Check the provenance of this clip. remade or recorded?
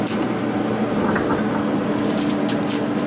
recorded